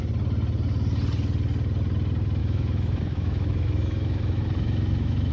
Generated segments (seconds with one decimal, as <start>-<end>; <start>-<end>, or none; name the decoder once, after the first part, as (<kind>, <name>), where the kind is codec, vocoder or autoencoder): 2.4-5.3 (autoencoder, DAC-VAE)